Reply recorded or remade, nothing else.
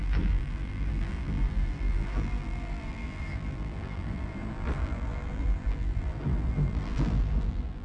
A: remade